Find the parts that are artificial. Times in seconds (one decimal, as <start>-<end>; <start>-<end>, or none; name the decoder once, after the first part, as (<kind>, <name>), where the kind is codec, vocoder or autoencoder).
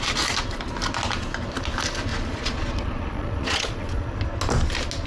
2.1-4.2 (vocoder, Vocos)